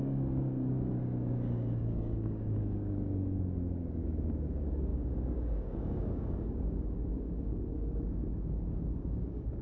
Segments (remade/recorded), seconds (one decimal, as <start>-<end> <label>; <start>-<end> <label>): 0.0-9.6 remade